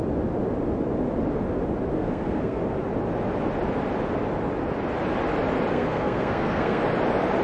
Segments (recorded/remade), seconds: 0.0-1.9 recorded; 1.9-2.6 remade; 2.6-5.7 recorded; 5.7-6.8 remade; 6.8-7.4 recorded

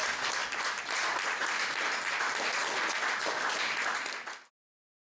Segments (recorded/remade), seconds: 0.0-5.1 recorded

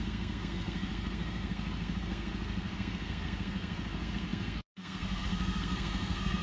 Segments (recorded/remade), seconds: 0.0-6.4 remade